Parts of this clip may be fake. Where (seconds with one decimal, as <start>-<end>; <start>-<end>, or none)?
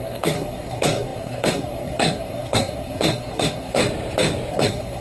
0.0-3.8; 4.5-5.0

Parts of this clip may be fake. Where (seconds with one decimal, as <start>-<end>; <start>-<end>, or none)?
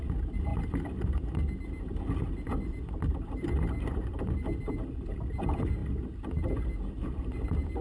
none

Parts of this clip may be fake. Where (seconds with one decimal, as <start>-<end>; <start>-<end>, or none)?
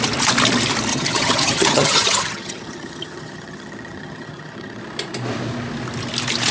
0.9-4.8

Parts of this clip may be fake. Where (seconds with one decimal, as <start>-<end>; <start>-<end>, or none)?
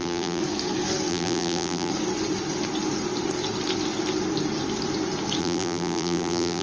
0.0-0.4; 1.1-1.9; 5.4-6.6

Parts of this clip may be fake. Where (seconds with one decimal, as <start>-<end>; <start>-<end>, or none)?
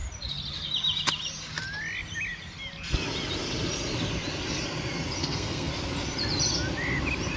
5.2-5.7